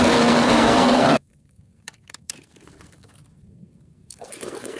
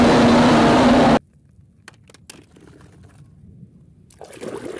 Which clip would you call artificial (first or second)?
first